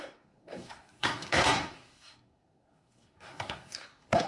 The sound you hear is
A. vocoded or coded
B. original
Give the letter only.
A